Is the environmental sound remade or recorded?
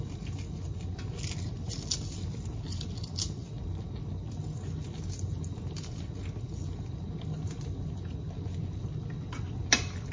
recorded